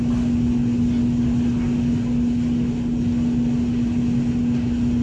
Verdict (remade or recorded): recorded